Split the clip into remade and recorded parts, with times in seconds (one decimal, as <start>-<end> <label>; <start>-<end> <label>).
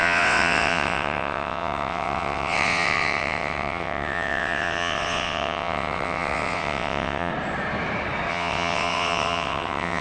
0.0-7.3 remade; 7.3-8.3 recorded; 8.3-10.0 remade